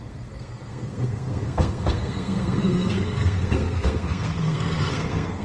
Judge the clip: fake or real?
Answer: fake